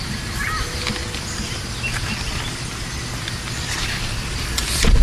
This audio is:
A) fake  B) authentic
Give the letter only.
B